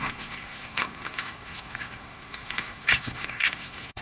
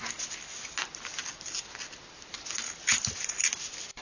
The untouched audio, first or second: second